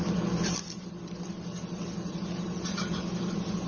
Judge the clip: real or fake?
real